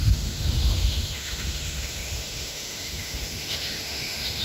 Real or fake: fake